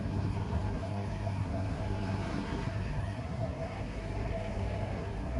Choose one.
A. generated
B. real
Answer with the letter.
A